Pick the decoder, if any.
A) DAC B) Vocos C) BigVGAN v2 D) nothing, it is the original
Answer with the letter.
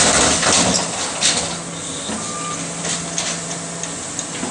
D